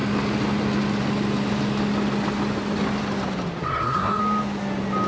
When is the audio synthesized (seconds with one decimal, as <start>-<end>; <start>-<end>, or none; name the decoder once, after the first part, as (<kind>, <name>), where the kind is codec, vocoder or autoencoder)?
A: 3.6-4.2 (codec, SNAC)